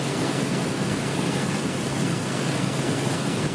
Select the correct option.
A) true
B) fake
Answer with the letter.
B